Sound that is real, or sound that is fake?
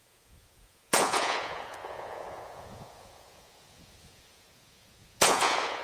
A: fake